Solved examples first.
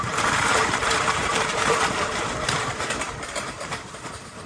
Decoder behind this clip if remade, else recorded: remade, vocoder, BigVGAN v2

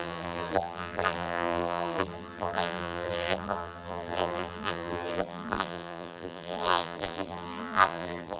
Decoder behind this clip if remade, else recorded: remade, vocoder, BigVGAN v2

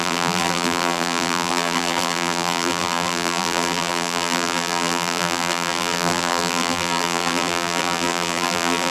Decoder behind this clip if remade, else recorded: remade, vocoder, BigVGAN v2